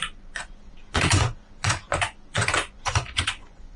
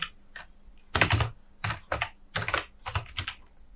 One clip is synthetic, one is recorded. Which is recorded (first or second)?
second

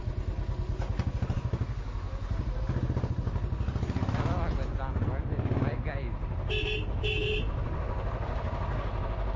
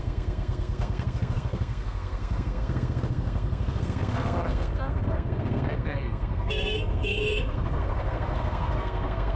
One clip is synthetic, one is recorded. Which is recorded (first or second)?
first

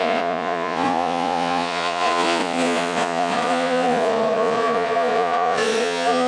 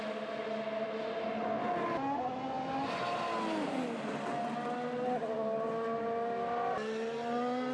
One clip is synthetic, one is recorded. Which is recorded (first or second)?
second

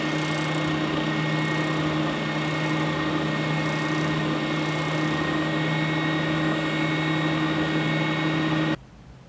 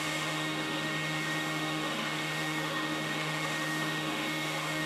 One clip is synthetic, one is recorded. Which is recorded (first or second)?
first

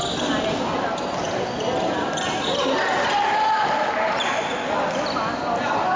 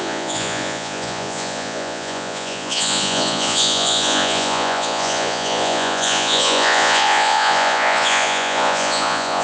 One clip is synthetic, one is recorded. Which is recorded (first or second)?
first